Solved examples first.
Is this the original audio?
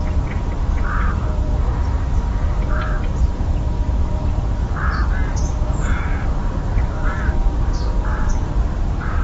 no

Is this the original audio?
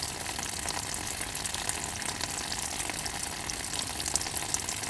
yes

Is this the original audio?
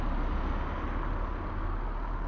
yes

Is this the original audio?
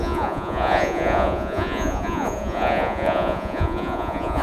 no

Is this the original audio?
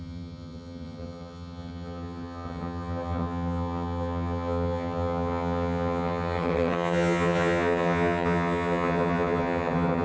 no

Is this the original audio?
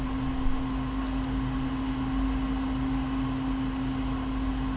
yes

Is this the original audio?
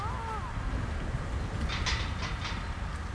yes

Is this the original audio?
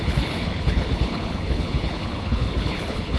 no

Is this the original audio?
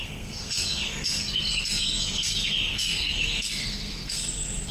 no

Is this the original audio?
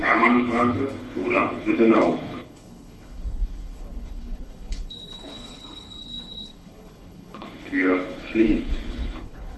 no